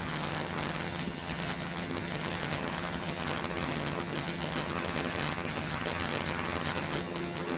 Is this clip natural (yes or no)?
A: no